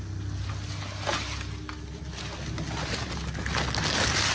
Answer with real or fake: real